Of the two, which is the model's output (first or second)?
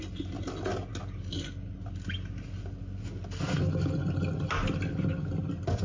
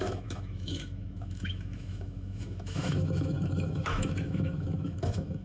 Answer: second